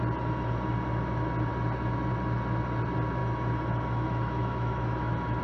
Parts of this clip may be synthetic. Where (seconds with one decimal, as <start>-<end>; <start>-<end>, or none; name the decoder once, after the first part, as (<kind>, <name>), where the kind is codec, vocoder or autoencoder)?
3.2-5.4 (autoencoder, DAC-VAE)